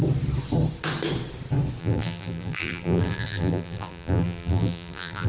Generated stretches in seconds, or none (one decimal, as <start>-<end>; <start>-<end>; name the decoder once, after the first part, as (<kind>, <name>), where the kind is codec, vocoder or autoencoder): 1.8-5.3 (vocoder, BigVGAN v2)